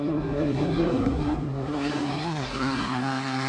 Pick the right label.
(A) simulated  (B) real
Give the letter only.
A